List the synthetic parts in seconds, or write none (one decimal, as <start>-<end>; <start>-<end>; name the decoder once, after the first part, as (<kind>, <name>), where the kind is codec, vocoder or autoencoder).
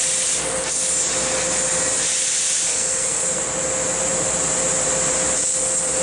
2.7-3.4 (codec, SNAC)